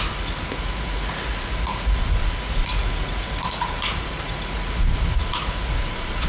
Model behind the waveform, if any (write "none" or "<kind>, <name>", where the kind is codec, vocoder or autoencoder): vocoder, Vocos